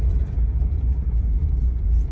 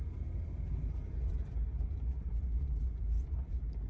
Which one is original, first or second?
second